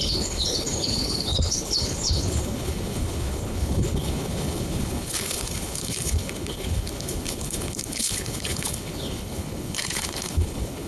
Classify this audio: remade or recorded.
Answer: remade